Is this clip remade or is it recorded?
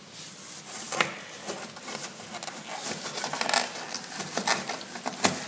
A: recorded